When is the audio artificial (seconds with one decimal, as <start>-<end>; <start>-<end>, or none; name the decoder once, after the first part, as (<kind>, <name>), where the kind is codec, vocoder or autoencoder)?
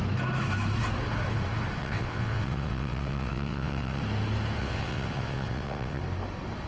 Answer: 1.8-4.0 (vocoder, WaveNeXt); 4.6-6.0